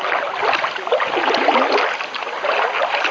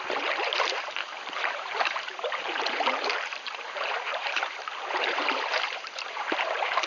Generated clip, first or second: second